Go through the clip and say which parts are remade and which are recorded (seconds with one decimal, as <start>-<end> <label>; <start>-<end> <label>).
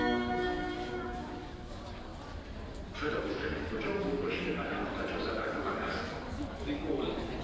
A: 0.0-2.1 remade; 2.1-3.2 recorded; 3.2-4.8 remade; 4.8-5.4 recorded; 5.4-7.4 remade